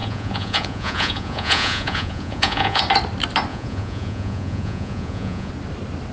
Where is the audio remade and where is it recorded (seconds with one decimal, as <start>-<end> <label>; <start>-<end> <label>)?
0.0-2.8 remade; 2.8-3.5 recorded; 3.5-5.5 remade; 5.5-6.1 recorded

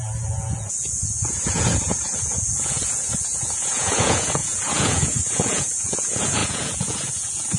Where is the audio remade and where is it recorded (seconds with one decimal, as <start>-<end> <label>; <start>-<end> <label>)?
0.0-7.6 remade

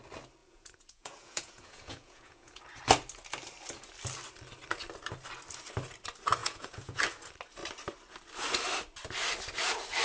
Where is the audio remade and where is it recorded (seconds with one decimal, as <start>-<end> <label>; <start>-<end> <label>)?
0.0-0.4 recorded; 0.4-2.6 remade; 2.6-6.4 recorded; 6.4-7.0 remade; 7.0-10.0 recorded

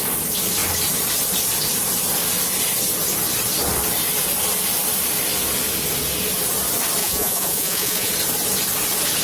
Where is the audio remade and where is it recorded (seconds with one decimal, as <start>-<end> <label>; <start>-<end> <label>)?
0.0-7.0 recorded; 7.0-8.1 remade; 8.1-9.2 recorded

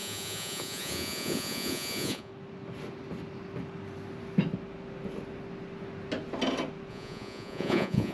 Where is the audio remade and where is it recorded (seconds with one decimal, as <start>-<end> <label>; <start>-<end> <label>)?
0.0-2.3 remade; 2.3-6.9 recorded; 6.9-8.1 remade